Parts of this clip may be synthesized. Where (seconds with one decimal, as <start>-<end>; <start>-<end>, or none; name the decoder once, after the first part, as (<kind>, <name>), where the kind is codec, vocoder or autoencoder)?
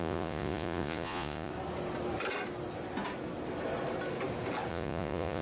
0.0-1.5 (vocoder, Vocos); 4.7-5.4